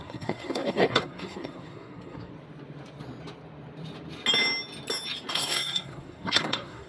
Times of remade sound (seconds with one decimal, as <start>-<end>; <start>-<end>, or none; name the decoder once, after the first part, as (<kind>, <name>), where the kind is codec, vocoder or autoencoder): 0.0-2.3 (codec, SNAC); 5.3-6.9